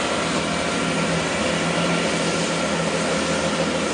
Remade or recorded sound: recorded